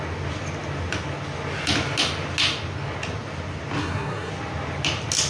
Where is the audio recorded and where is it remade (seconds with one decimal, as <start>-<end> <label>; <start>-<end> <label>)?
0.0-3.8 recorded; 3.8-4.3 remade; 4.3-5.3 recorded